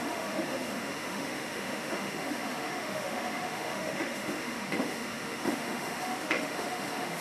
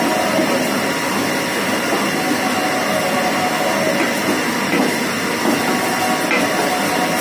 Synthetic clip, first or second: first